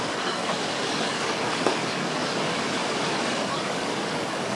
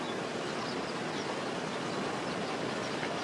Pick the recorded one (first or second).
second